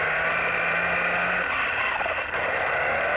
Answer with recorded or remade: recorded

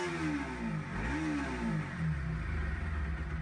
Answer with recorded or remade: recorded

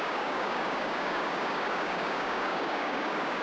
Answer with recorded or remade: remade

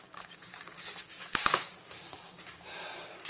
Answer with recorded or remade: remade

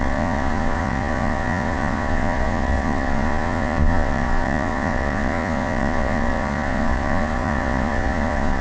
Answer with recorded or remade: remade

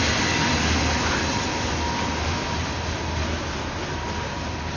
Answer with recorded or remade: recorded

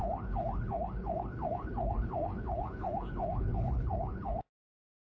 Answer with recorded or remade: remade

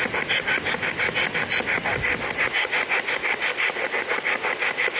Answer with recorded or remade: recorded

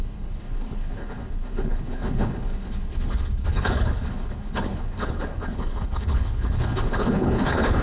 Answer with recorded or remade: remade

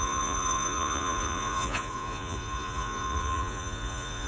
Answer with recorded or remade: remade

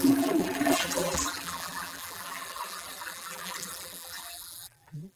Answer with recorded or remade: remade